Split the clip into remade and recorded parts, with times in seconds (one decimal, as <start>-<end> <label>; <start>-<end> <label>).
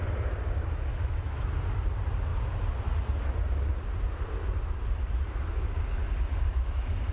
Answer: 0.0-0.9 recorded; 0.9-1.5 remade; 1.5-7.1 recorded